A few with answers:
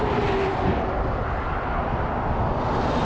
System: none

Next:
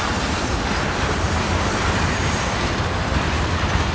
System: none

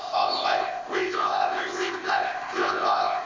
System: codec, ZipCodec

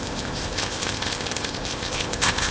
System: codec, ZipCodec